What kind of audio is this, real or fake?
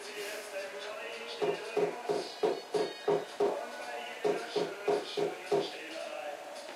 fake